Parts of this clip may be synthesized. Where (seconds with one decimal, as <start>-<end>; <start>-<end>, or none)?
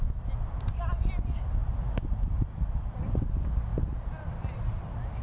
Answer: none